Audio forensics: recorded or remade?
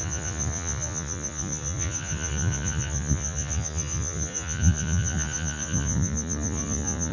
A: remade